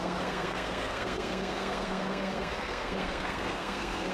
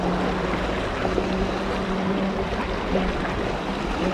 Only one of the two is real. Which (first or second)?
second